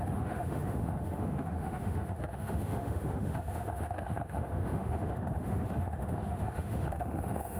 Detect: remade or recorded remade